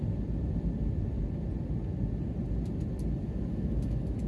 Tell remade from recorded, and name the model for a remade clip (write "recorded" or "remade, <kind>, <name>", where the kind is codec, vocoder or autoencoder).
recorded